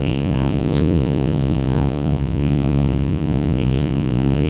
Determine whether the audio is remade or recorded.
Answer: remade